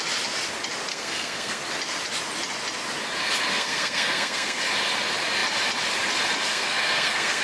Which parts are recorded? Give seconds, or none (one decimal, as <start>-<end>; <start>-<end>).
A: 0.0-0.9; 1.6-3.5; 4.6-6.5